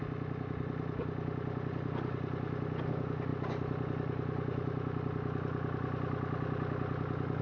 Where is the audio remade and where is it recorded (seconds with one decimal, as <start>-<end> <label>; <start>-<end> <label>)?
0.0-7.4 recorded

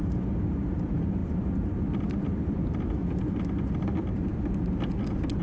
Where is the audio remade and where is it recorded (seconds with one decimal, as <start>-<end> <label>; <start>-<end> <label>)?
0.0-5.4 recorded

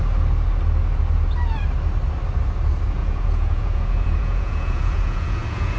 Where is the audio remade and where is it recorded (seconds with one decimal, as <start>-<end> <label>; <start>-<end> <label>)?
0.0-3.0 recorded; 3.0-5.8 remade